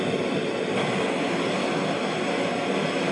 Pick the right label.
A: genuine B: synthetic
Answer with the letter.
A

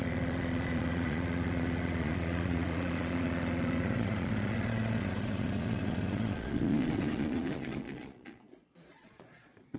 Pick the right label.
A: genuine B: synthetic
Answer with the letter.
B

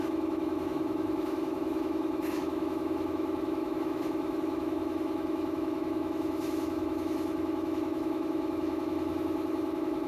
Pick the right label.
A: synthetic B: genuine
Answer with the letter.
A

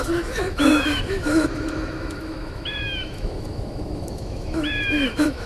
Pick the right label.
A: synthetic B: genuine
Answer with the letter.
A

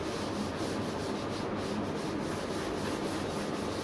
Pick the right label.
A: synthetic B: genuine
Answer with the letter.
B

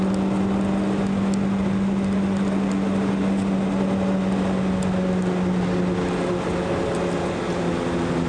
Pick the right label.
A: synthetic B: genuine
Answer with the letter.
B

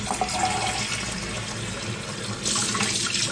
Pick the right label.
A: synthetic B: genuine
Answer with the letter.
B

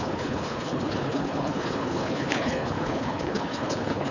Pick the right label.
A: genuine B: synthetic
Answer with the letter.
B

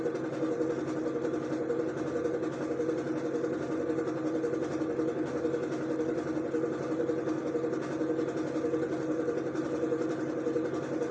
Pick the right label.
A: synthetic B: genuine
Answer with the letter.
B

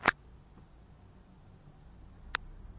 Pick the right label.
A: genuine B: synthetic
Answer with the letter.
A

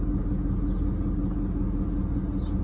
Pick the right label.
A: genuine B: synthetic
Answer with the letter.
A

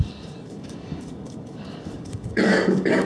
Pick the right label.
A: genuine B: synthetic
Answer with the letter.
B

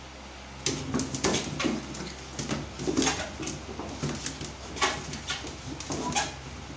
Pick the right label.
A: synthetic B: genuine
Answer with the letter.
B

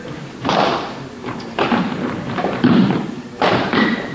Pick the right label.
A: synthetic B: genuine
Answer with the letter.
A